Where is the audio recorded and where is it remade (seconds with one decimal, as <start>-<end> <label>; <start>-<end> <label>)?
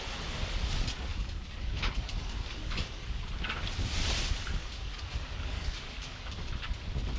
0.0-1.1 recorded; 1.1-3.2 remade; 3.2-4.6 recorded; 4.6-6.5 remade; 6.5-7.2 recorded